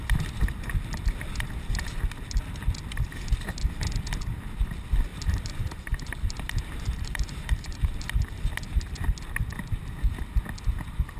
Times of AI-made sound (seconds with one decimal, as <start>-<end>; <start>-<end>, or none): 5.1-8.4